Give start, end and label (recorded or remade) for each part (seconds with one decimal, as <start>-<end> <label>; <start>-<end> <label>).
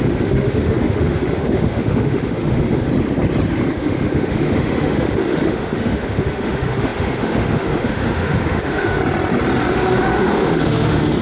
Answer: 0.0-2.9 remade; 2.9-3.5 recorded; 3.5-9.0 remade; 9.0-9.7 recorded; 9.7-11.2 remade